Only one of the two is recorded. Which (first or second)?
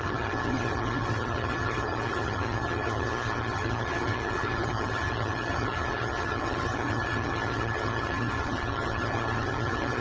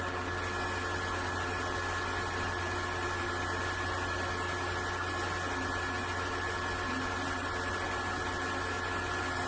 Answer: second